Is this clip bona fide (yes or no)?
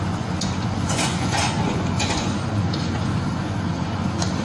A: no